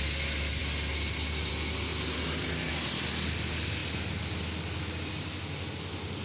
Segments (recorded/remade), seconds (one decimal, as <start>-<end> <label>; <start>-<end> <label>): 0.0-6.2 recorded